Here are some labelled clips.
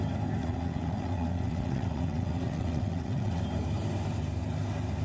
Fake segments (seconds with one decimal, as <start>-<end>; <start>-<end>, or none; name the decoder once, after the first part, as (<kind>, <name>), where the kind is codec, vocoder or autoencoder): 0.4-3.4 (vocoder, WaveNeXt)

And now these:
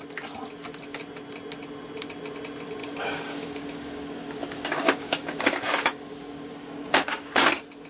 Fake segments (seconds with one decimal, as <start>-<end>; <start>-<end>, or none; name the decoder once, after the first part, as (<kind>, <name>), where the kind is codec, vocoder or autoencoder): 2.8-7.5 (codec, DAC)

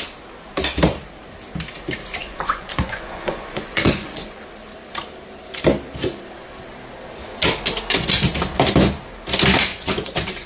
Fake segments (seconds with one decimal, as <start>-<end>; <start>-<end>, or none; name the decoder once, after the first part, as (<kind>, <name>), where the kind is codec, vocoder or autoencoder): 2.2-4.4 (vocoder, Vocos); 9.7-10.5

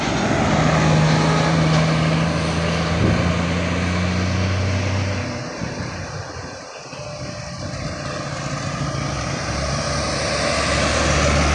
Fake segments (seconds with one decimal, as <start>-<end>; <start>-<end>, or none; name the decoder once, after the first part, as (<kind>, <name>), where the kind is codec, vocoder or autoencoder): none

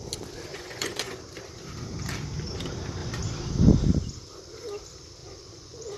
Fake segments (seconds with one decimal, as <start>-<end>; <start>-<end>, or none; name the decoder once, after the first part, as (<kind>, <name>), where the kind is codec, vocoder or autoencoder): 0.5-1.2 (vocoder, Vocos); 5.2-6.0